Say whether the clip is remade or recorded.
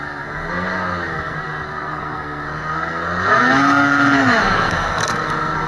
remade